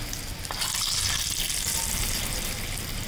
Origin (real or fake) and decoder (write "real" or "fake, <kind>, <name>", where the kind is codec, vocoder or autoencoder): real